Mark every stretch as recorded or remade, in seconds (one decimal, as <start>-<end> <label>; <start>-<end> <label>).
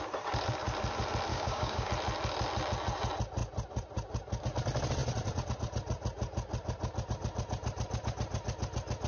0.0-1.3 recorded; 1.3-1.9 remade; 1.9-9.1 recorded